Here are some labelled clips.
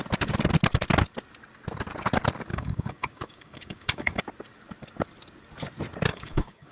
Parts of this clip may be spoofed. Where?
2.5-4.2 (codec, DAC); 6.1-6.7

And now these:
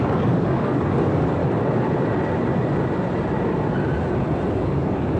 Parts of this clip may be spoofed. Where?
0.0-1.4 (codec, DAC); 4.5-5.2

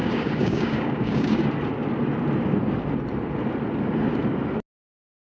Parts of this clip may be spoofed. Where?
0.0-1.4 (codec, DAC)

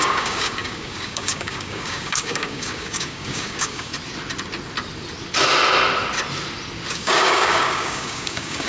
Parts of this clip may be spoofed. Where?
0.0-3.9 (codec, DAC); 6.9-8.7

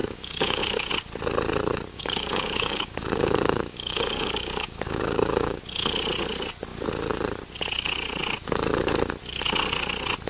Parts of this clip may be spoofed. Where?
0.0-0.9 (codec, DAC); 1.9-5.6